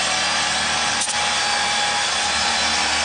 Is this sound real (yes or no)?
yes